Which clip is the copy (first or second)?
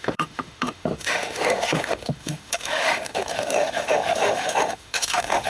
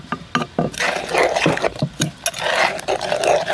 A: first